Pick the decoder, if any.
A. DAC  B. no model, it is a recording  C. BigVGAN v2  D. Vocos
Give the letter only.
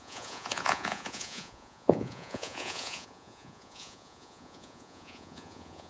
D